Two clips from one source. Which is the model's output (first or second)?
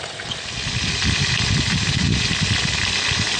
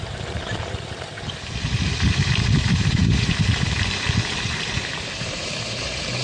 second